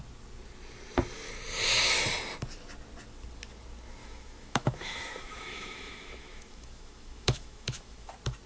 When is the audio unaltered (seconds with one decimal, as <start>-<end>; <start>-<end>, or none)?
0.0-4.0; 8.1-8.5